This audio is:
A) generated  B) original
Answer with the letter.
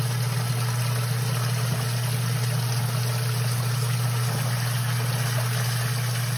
B